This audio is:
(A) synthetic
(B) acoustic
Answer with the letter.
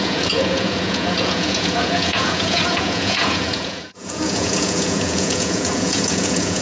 A